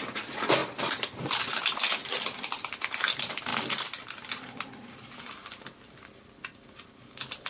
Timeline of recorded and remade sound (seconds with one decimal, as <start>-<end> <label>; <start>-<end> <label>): 0.0-0.6 recorded; 0.6-1.4 remade; 1.4-3.5 recorded; 3.5-5.0 remade; 5.0-7.5 recorded